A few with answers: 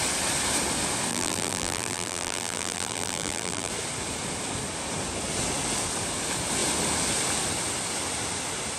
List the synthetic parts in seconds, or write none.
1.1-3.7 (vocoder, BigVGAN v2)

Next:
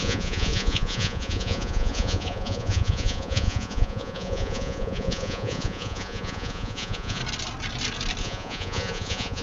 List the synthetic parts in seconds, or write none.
0.0-7.2 (vocoder, Vocos); 8.2-9.4

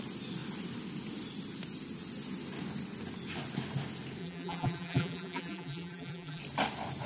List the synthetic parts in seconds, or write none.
4.2-6.4 (vocoder, BigVGAN v2)

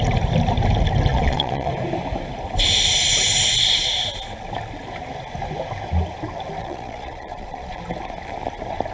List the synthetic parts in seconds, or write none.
1.1-1.7 (vocoder, Vocos); 6.6-7.8

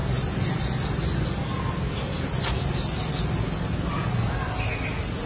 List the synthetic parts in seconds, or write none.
none

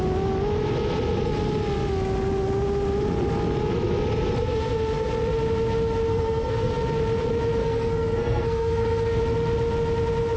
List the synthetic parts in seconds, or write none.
6.1-6.7 (codec, SNAC); 7.6-9.2